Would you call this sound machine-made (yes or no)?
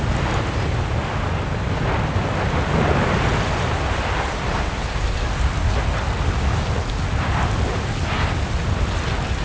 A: no